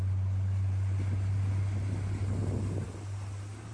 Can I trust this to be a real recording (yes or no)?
yes